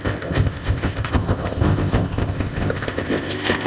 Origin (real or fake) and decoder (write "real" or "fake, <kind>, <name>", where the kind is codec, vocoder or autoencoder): fake, codec, ZipCodec